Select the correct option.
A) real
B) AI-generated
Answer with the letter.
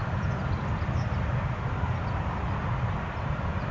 A